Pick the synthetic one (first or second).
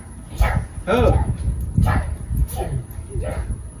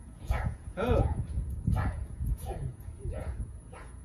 second